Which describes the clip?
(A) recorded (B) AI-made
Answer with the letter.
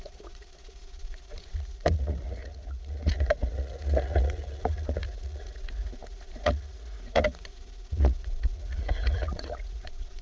B